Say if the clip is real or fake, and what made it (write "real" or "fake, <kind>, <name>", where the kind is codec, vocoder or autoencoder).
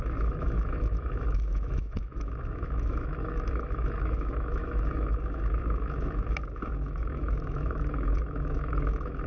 fake, autoencoder, DAC-VAE